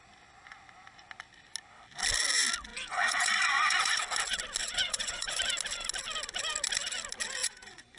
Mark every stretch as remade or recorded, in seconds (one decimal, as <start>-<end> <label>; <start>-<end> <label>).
0.0-2.7 recorded; 2.7-4.0 remade; 4.0-4.6 recorded; 4.6-5.4 remade; 5.4-7.4 recorded; 7.4-8.0 remade